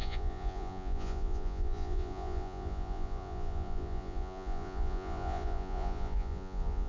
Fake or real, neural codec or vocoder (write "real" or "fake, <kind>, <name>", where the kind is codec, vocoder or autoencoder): fake, vocoder, Vocos